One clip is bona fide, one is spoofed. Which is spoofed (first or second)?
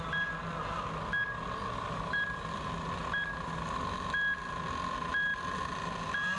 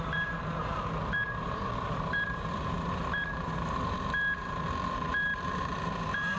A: second